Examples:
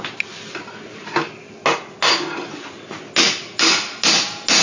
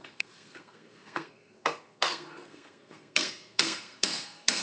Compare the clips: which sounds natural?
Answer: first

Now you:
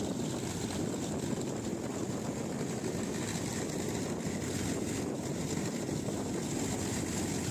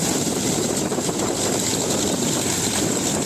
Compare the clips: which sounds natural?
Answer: first